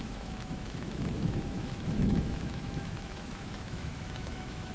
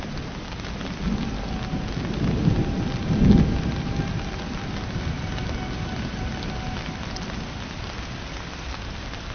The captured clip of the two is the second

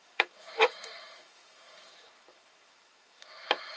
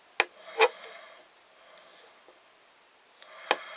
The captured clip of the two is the second